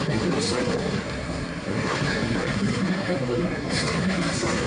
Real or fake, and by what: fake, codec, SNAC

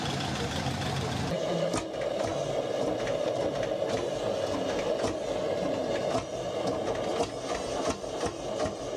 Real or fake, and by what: real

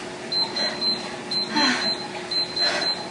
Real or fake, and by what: real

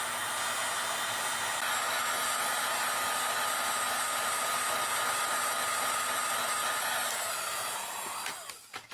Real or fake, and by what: real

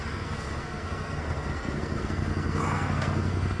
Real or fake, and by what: fake, codec, SNAC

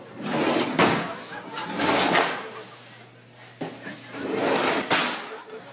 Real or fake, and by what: real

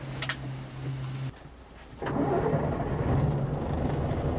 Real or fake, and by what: real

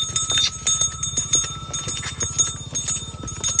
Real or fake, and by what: real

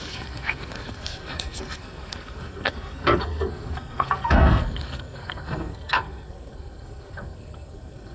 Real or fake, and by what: fake, codec, SNAC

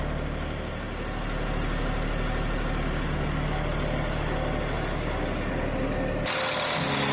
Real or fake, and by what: real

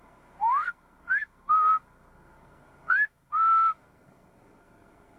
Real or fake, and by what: fake, codec, SNAC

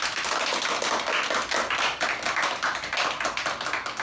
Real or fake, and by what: real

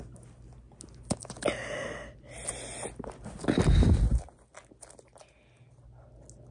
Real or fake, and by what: real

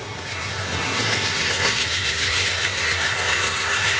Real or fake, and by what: fake, codec, SNAC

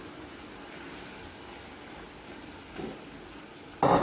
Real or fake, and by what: real